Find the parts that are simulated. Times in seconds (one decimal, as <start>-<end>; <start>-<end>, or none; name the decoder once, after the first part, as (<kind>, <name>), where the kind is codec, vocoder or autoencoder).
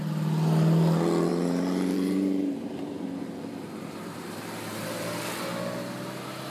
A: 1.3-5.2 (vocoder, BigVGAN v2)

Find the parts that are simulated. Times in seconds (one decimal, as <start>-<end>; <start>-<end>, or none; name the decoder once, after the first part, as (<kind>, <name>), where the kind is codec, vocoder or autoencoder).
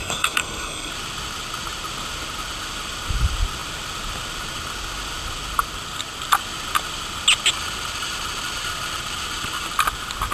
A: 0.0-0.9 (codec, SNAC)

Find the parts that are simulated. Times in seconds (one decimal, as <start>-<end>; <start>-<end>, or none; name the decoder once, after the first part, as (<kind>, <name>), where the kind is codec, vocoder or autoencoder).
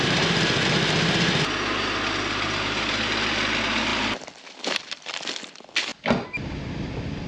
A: none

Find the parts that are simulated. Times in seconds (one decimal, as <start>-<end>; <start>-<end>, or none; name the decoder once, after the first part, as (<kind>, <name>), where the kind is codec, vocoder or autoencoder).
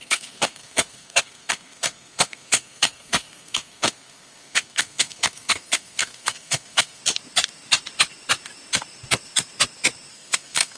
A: 0.0-7.0 (codec, SNAC); 10.1-10.8